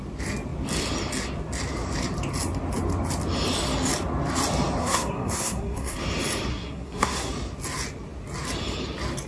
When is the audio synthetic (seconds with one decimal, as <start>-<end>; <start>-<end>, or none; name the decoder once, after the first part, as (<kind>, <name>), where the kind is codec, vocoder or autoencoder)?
4.8-6.0 (codec, SNAC); 6.5-7.3